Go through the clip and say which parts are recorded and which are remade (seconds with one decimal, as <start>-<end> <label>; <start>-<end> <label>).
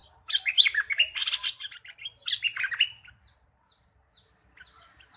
0.0-1.2 remade; 1.2-4.3 recorded; 4.3-5.2 remade